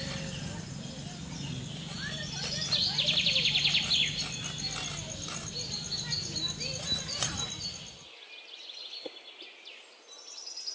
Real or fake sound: real